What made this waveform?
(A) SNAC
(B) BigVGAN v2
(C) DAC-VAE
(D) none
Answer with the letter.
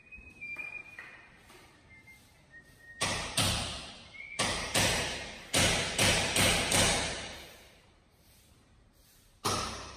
B